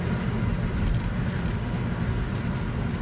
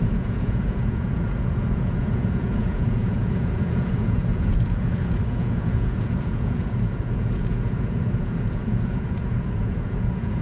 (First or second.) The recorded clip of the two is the first